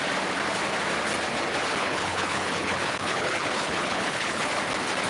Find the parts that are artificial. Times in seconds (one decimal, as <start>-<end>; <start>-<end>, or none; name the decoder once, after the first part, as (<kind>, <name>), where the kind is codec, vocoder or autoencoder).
1.8-4.5 (codec, HILCodec)